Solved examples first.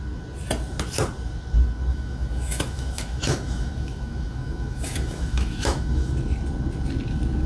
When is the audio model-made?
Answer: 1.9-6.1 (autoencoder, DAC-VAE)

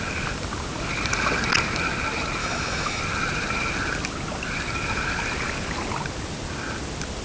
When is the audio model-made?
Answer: 2.4-3.0 (autoencoder, DAC-VAE)